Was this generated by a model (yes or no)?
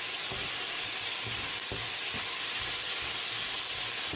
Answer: no